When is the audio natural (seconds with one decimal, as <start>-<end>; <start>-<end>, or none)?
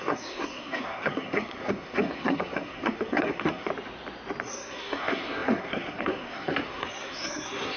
3.7-4.4